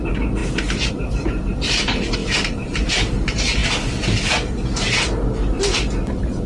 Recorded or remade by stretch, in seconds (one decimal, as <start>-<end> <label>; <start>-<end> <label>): 0.0-3.6 remade; 3.6-4.3 recorded; 4.3-6.5 remade